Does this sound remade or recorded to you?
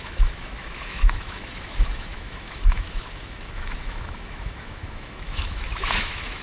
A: remade